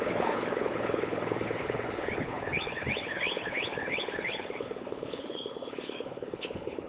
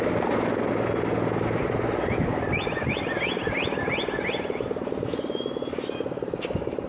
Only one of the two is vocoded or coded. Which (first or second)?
first